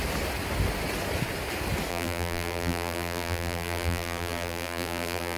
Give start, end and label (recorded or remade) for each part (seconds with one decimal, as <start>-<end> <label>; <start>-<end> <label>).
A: 0.0-1.9 recorded; 1.9-5.4 remade